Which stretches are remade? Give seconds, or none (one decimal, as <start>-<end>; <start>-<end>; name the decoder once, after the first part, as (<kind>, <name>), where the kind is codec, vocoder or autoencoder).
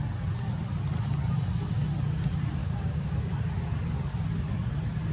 2.6-3.2 (codec, DAC)